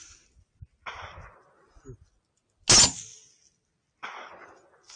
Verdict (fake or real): real